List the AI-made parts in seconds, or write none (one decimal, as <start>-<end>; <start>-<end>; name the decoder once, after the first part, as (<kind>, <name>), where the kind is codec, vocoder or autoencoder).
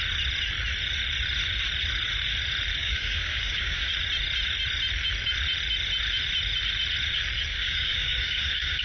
2.8-3.9 (codec, DAC); 7.5-8.8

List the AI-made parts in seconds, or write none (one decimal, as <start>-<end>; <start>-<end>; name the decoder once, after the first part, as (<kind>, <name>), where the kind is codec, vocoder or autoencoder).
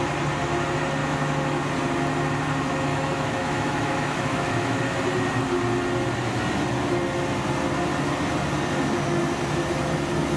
1.0-1.6 (autoencoder, DAC-VAE); 2.9-4.8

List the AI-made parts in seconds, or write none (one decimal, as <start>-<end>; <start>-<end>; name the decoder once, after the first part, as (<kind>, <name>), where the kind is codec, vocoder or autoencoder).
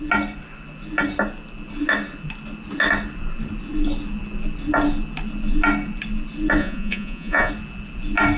6.6-7.5 (vocoder, Vocos)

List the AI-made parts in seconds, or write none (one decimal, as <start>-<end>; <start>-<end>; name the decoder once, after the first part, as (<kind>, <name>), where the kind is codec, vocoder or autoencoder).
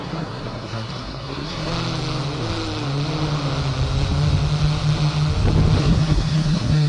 0.0-1.7 (codec, SNAC); 5.8-6.9